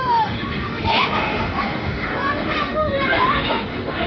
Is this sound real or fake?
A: fake